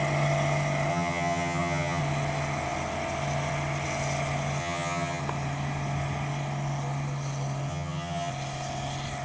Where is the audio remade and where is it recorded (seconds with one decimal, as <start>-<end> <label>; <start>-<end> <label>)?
0.0-0.9 recorded; 0.9-2.0 remade; 2.0-4.6 recorded; 4.6-5.2 remade; 5.2-7.7 recorded; 7.7-8.3 remade; 8.3-9.2 recorded